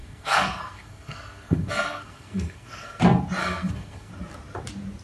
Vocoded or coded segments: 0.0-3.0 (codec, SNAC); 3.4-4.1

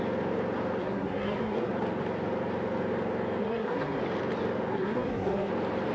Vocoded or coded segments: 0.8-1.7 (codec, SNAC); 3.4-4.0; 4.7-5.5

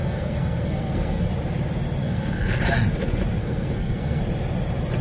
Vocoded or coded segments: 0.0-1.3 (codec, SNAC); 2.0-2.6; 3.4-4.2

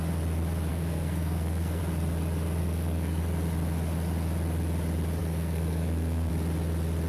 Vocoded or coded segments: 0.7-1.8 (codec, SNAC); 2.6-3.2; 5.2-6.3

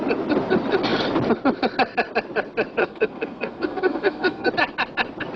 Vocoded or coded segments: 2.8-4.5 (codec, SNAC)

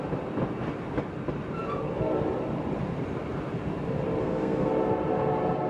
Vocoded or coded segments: 4.2-4.7 (codec, SNAC)